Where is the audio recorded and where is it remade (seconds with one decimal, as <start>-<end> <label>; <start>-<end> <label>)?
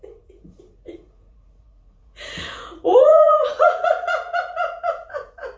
0.0-5.6 remade